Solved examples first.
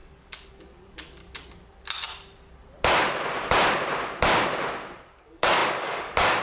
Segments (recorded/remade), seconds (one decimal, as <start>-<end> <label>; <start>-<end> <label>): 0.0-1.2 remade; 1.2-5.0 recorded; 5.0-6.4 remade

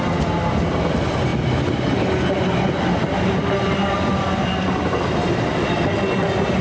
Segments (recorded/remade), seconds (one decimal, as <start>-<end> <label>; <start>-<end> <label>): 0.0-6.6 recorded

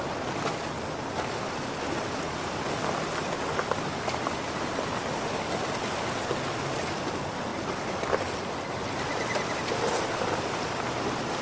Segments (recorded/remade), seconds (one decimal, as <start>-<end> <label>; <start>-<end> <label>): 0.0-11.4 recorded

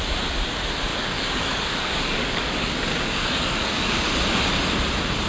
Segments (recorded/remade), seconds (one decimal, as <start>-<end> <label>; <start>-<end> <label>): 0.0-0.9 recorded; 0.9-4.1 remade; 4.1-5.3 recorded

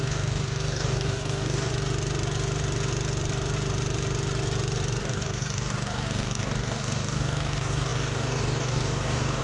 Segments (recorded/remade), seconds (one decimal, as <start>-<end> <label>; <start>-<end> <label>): 0.0-1.7 remade; 1.7-5.0 recorded; 5.0-9.4 remade